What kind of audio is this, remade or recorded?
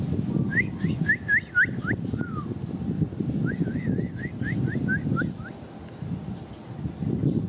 recorded